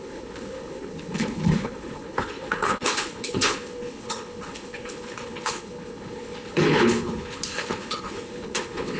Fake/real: fake